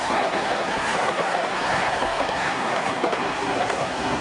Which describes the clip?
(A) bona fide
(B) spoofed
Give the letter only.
B